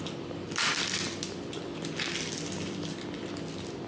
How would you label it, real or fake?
real